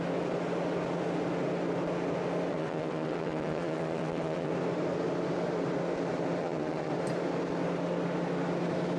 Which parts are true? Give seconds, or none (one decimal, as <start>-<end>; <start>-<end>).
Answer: 0.0-2.5; 4.5-6.4; 6.9-9.0